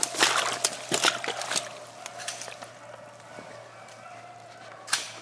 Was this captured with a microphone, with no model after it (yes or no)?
yes